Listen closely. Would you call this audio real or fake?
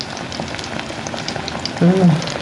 real